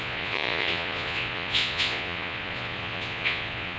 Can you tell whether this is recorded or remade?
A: remade